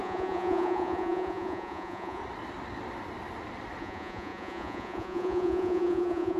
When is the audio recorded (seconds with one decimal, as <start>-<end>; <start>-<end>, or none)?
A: 2.2-3.8